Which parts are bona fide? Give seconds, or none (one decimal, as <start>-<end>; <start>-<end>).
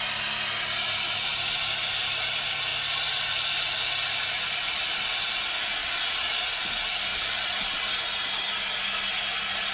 0.0-5.8; 6.4-9.7